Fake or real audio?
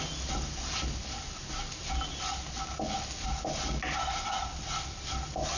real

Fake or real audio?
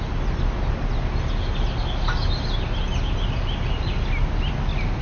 real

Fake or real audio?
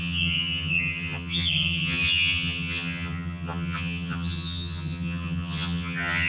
fake